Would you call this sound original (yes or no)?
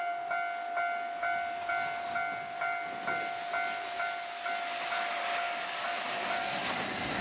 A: yes